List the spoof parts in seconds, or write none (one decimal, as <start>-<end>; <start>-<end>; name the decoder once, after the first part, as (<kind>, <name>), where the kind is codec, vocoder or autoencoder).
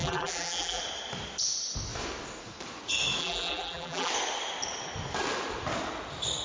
0.0-0.8 (vocoder, BigVGAN v2); 3.2-4.1